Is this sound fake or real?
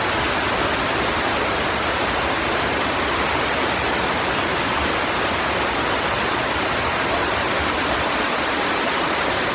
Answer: real